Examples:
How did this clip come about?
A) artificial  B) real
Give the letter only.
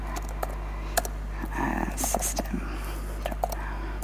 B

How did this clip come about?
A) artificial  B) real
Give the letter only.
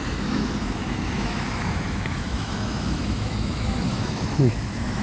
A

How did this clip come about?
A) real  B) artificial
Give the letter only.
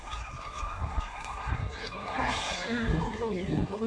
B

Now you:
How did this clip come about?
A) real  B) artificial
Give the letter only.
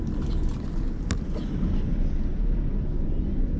A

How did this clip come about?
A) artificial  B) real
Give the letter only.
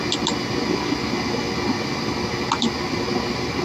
B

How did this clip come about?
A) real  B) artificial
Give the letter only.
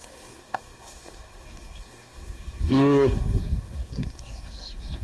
B